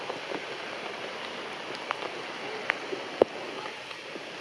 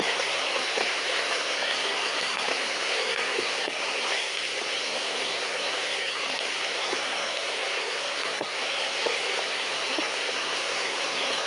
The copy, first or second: second